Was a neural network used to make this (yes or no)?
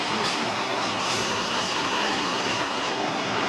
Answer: yes